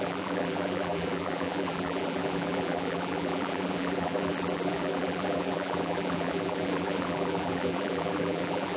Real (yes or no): no